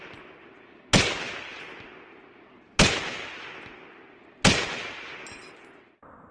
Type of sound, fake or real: real